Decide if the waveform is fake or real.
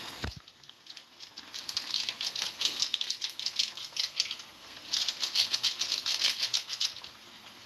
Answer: fake